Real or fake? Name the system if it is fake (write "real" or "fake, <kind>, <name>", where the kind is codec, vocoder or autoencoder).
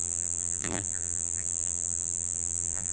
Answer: fake, vocoder, BigVGAN v2